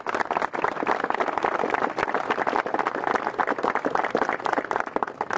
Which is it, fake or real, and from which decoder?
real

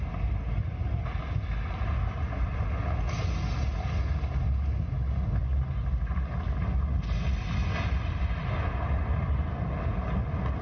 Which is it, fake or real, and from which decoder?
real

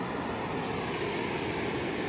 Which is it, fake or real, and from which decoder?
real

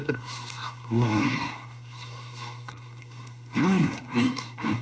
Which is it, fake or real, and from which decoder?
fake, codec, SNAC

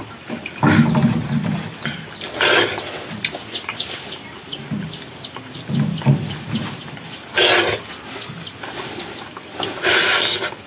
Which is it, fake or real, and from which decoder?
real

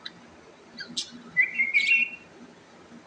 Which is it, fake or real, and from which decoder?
real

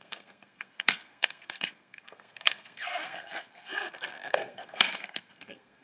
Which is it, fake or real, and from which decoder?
fake, codec, SNAC